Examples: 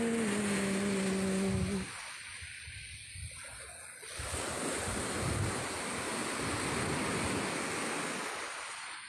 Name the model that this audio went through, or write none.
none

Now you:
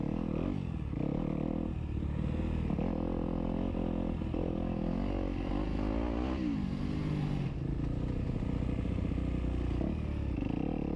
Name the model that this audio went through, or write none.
none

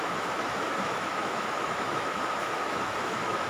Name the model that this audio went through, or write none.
autoencoder, DAC-VAE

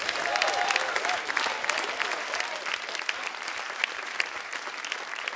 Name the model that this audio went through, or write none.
none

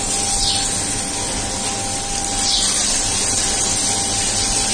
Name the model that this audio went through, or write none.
none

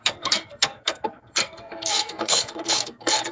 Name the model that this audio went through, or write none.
codec, SNAC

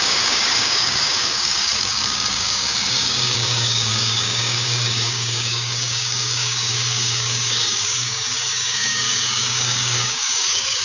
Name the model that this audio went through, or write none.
codec, DAC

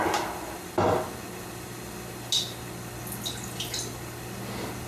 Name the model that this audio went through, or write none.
none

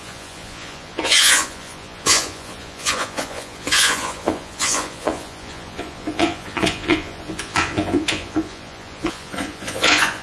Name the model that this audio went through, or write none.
vocoder, Vocos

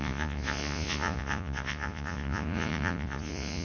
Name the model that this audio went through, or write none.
vocoder, Vocos